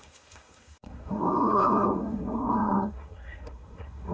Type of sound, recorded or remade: remade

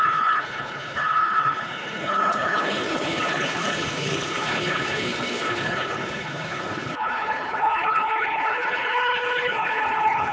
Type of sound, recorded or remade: remade